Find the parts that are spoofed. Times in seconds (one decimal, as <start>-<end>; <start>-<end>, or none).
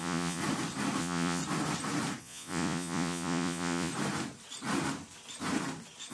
0.0-0.4; 1.0-1.4; 2.2-3.9